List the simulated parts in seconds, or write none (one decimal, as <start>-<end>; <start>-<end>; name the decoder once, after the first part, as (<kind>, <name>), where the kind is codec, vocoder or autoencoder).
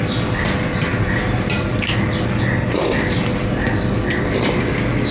none